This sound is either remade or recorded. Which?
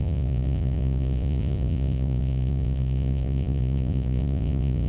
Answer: remade